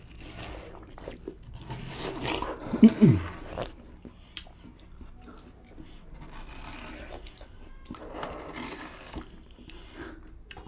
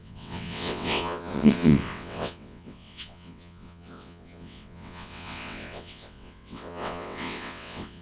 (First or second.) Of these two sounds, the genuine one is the first